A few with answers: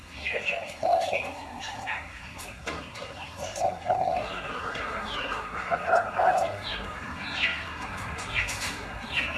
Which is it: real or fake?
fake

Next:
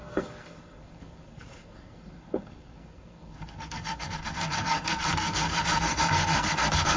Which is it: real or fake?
fake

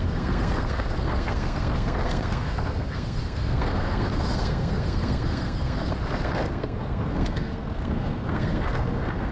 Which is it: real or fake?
fake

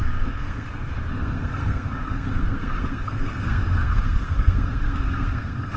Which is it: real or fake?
fake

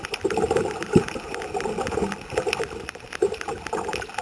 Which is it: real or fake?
real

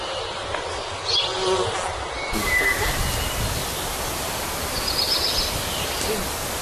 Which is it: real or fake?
real